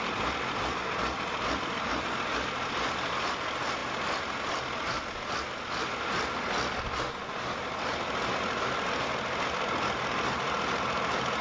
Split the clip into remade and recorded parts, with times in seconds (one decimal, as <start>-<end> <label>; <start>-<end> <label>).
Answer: 0.0-11.4 recorded